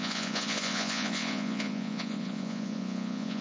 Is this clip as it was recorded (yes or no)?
no